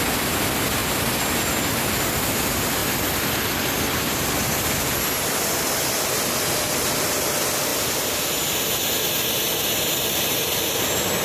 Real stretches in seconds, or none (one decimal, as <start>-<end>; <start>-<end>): 0.0-11.2